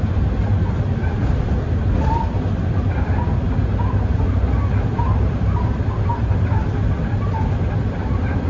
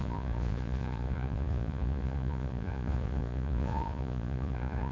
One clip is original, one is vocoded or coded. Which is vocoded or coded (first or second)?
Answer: second